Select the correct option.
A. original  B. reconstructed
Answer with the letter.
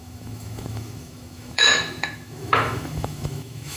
B